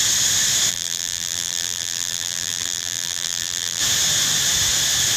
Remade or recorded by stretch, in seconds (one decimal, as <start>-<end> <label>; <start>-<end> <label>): 0.0-0.7 recorded; 0.7-3.8 remade; 3.8-5.2 recorded